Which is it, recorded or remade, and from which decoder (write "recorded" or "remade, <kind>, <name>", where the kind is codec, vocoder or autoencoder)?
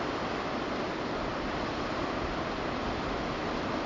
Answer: recorded